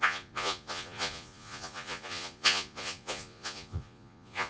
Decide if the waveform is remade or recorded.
remade